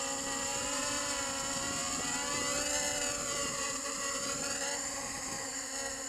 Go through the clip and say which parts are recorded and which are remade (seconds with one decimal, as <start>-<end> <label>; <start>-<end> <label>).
0.0-0.5 recorded; 0.5-1.2 remade; 1.2-3.4 recorded; 3.4-5.5 remade; 5.5-6.1 recorded

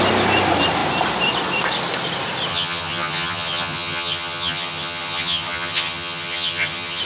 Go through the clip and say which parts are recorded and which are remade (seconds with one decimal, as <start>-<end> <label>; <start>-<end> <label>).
0.0-2.5 recorded; 2.5-7.0 remade

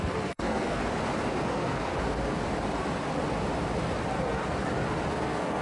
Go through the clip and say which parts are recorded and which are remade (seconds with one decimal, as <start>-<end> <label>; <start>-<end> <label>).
0.0-0.8 remade; 0.8-1.4 recorded; 1.4-1.9 remade; 1.9-5.1 recorded; 5.1-5.6 remade

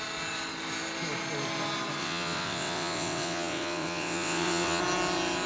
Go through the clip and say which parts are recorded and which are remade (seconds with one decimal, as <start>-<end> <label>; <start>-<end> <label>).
0.0-2.0 recorded; 2.0-4.8 remade; 4.8-5.5 recorded

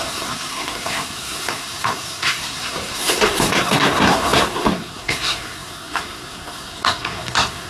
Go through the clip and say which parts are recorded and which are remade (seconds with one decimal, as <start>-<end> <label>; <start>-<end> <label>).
0.0-7.7 remade

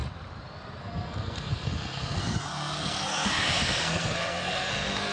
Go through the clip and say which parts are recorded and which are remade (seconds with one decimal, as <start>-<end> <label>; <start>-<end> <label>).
0.0-0.8 recorded; 0.8-5.1 remade

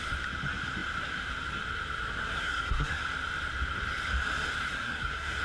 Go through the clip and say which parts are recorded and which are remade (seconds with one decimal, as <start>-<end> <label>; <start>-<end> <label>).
0.0-2.3 recorded; 2.3-3.0 remade; 3.0-4.7 recorded; 4.7-5.4 remade